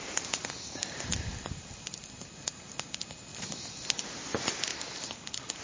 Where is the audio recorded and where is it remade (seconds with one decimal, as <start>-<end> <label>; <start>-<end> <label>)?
0.0-0.4 recorded; 0.4-2.7 remade; 2.7-3.3 recorded; 3.3-4.0 remade; 4.0-5.6 recorded